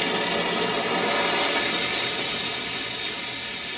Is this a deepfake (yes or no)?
no